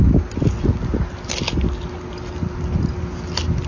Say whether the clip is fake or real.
real